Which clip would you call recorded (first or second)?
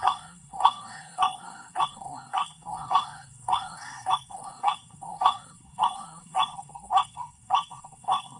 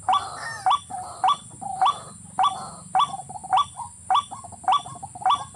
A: second